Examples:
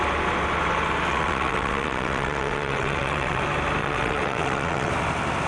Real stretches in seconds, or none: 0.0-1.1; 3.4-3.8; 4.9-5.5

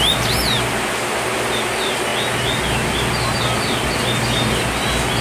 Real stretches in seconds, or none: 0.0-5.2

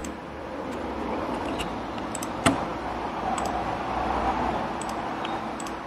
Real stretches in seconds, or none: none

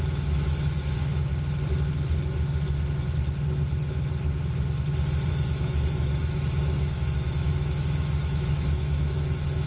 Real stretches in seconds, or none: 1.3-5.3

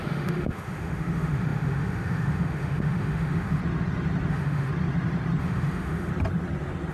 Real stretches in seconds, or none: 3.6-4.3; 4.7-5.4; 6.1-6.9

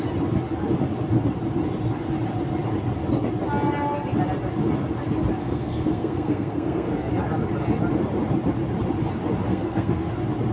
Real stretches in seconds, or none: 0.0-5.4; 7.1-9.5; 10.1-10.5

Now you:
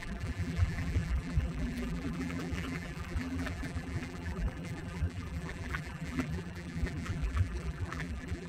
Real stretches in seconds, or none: none

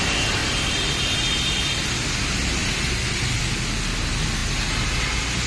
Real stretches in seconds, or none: 0.0-0.4; 1.0-2.6; 3.4-5.5